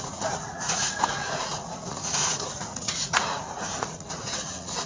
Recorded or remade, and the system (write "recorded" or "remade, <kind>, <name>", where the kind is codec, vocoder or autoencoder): remade, vocoder, Vocos